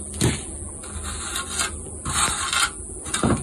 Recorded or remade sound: recorded